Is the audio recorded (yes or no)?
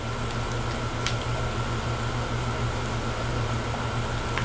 yes